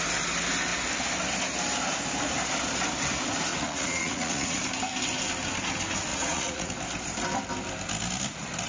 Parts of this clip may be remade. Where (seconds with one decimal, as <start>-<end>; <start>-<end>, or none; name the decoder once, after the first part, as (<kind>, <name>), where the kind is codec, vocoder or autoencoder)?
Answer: 3.5-4.6 (vocoder, Vocos); 6.1-6.7